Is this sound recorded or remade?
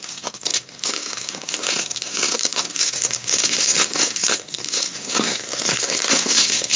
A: remade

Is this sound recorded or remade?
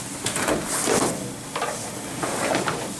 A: recorded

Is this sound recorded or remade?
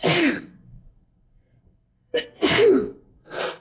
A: remade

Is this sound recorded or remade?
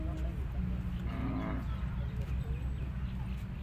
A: recorded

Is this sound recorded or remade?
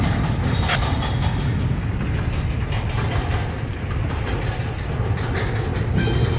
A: recorded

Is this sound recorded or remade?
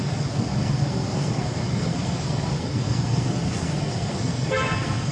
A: remade